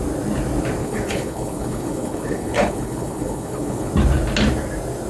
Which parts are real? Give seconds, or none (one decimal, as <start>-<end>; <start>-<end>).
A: 0.0-0.8; 3.9-5.1